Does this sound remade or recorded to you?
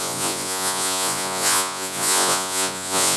remade